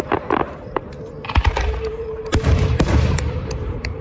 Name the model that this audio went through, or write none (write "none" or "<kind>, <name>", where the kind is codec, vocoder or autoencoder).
vocoder, BigVGAN v2